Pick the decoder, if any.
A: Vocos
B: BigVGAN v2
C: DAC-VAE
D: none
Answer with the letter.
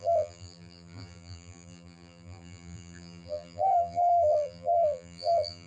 B